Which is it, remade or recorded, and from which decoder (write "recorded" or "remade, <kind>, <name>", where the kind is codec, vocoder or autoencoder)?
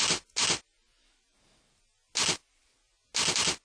recorded